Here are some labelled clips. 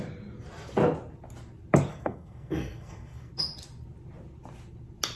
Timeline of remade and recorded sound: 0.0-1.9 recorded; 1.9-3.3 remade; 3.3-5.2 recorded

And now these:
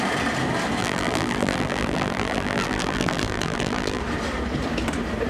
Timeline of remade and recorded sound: 0.0-0.8 recorded; 0.8-4.0 remade; 4.0-5.3 recorded